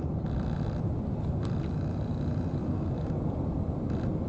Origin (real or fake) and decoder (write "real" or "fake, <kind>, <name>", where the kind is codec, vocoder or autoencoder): real